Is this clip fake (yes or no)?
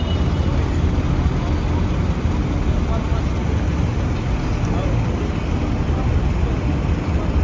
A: no